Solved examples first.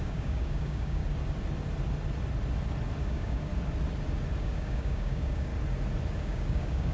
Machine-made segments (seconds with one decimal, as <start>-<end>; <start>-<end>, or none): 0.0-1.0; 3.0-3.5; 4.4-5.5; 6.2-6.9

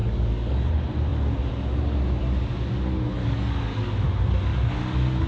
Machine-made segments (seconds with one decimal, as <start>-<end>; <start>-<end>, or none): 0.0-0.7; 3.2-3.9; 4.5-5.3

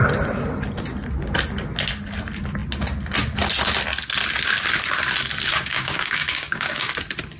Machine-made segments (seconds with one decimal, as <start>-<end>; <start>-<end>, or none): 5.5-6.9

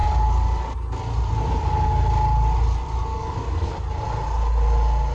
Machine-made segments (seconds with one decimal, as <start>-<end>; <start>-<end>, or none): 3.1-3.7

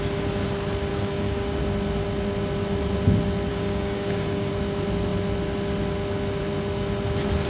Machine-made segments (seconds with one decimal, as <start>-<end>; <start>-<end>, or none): 0.9-1.6; 3.5-4.5

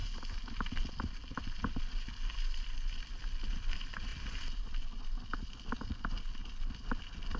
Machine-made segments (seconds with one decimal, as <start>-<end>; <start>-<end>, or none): none

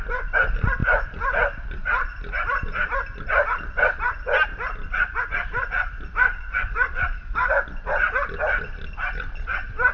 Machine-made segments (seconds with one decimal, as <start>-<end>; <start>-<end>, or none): 6.3-7.5

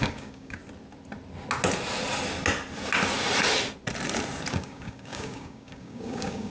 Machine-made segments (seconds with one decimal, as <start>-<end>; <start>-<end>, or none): 0.0-0.6; 4.5-6.5